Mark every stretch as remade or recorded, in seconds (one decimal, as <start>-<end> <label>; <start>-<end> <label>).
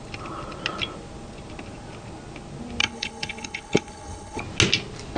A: 0.0-2.8 recorded; 2.8-4.4 remade; 4.4-5.2 recorded